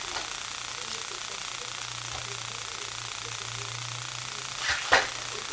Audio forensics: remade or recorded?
recorded